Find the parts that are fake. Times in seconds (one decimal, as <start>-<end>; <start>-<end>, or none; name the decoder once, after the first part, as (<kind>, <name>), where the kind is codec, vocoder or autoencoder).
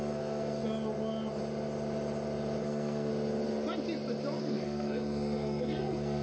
0.0-0.6 (codec, SNAC); 2.6-3.1; 4.4-6.2